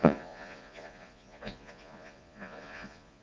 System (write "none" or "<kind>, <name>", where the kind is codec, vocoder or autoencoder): vocoder, Vocos